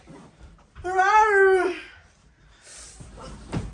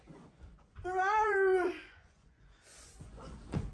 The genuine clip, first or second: first